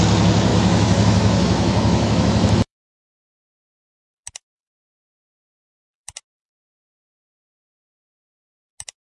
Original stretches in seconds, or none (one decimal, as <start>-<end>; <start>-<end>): 0.0-0.5; 2.9-9.0